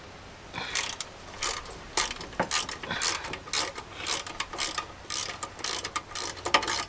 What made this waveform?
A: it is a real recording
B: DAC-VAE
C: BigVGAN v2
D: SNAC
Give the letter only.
A